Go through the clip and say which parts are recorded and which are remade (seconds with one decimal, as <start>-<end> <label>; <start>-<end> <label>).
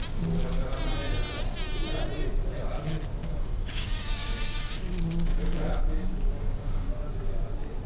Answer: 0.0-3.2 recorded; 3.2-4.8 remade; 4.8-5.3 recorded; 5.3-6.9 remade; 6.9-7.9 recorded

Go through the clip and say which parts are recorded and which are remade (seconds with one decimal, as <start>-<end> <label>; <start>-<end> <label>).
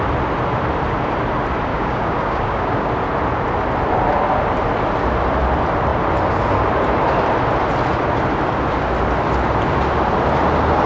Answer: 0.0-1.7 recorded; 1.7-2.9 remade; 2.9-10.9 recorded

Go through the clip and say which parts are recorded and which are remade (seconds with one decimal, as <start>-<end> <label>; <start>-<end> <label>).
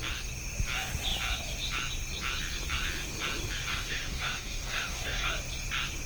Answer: 0.0-3.7 recorded; 3.7-5.3 remade; 5.3-6.1 recorded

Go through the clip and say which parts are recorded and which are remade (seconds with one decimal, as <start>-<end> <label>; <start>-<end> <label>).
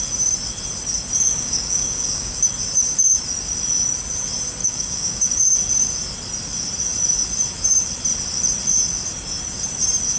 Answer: 0.0-1.3 recorded; 1.3-2.4 remade; 2.4-4.6 recorded; 4.6-5.3 remade; 5.3-10.2 recorded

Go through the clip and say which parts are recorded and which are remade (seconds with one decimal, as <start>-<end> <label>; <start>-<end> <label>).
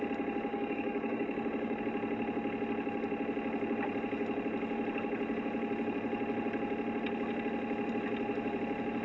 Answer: 0.0-0.5 recorded; 0.5-1.8 remade; 1.8-9.0 recorded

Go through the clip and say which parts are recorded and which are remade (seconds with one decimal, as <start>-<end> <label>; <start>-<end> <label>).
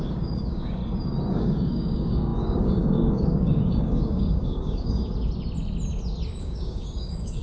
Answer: 0.0-0.8 remade; 0.8-1.3 recorded; 1.3-5.0 remade; 5.0-6.4 recorded; 6.4-7.4 remade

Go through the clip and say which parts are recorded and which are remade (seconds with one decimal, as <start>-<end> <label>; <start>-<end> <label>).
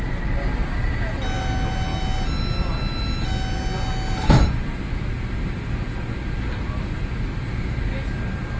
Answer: 0.0-8.6 recorded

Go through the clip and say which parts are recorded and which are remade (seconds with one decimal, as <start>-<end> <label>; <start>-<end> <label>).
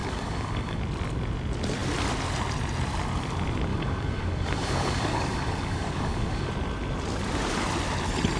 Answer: 0.0-0.8 remade; 0.8-3.7 recorded; 3.7-6.5 remade; 6.5-8.4 recorded